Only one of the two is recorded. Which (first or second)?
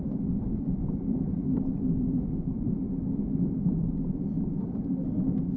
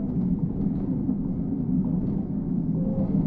second